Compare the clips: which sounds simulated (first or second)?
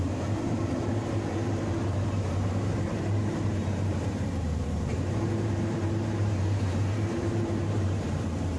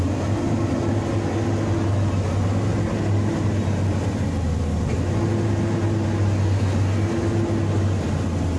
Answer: first